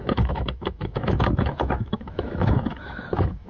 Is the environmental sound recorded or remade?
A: remade